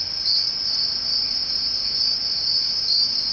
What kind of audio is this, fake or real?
real